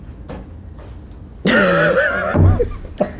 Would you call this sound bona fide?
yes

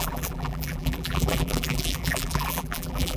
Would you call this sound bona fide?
no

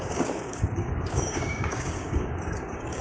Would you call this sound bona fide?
no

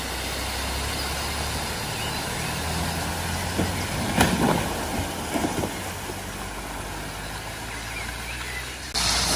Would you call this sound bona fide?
yes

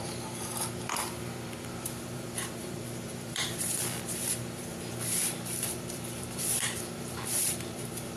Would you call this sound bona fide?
no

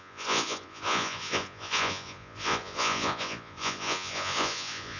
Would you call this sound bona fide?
no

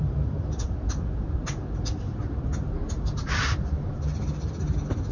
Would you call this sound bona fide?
yes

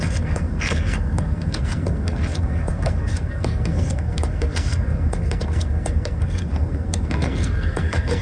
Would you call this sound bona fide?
no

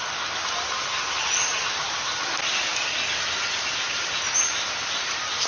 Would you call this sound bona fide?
yes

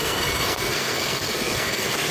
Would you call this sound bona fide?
no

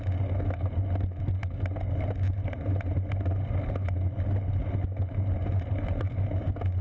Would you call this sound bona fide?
yes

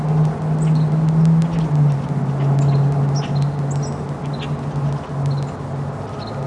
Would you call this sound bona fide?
yes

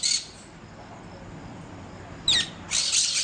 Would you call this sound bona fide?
yes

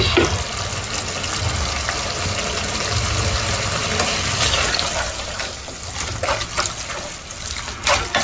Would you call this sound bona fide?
yes